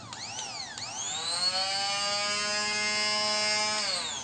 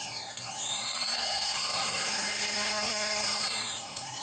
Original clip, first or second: first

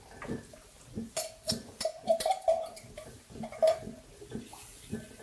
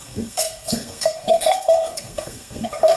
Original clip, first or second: first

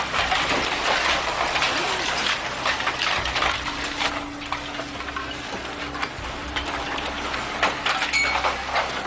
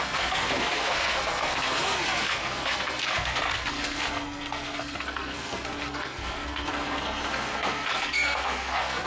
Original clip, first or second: first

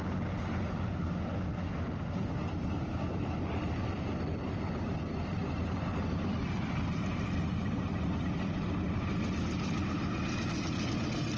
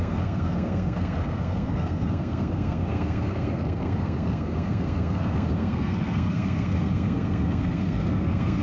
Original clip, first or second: first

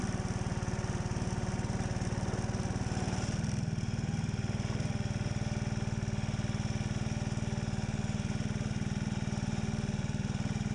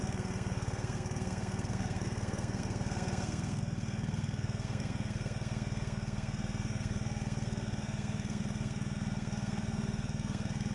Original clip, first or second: first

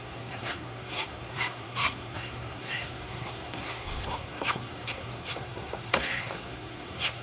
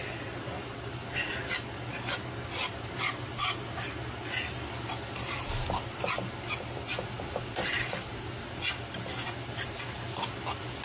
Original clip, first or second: second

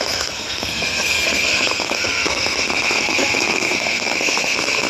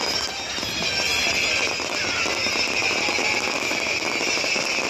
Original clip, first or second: second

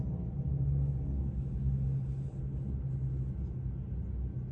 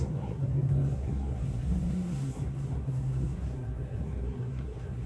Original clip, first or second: first